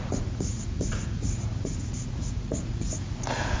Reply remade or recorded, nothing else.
remade